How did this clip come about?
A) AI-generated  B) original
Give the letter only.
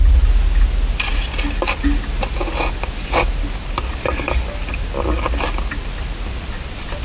B